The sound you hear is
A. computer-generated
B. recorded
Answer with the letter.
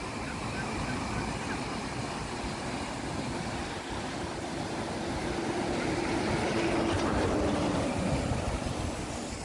B